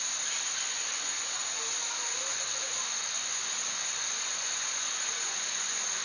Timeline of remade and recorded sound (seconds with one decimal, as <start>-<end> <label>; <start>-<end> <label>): 0.0-0.6 recorded; 0.6-1.4 remade; 1.4-2.3 recorded; 2.3-6.0 remade